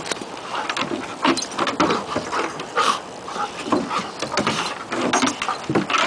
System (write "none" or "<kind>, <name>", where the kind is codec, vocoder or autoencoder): none